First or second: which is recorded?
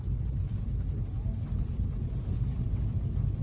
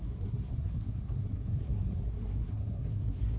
first